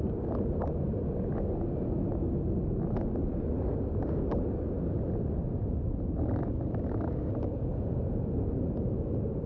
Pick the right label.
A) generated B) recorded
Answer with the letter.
B